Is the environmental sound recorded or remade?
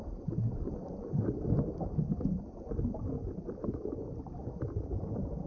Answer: recorded